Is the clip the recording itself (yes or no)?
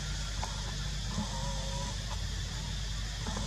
yes